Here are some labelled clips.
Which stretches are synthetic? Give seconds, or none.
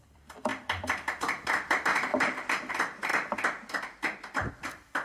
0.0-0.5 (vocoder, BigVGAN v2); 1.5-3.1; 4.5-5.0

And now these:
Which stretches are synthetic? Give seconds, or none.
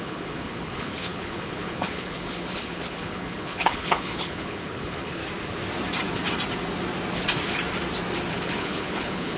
0.0-5.2 (codec, HILCodec); 8.3-9.4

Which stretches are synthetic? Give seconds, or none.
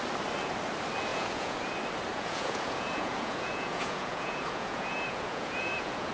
1.1-1.7 (vocoder, Vocos); 2.1-6.1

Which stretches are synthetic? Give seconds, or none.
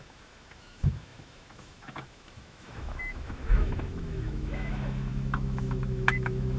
0.0-6.6 (autoencoder, DAC-VAE)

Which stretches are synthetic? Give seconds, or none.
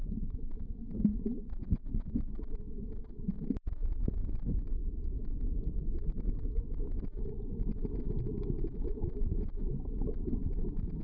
4.8-6.9 (autoencoder, DAC-VAE)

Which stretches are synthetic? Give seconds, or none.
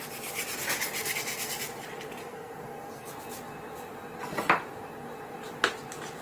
1.0-1.6 (codec, SNAC); 2.2-3.1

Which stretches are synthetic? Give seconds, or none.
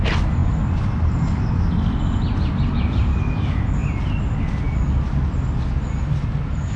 none